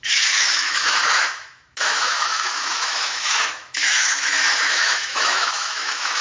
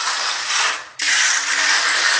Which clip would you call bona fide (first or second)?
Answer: second